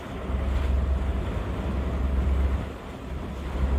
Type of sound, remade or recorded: recorded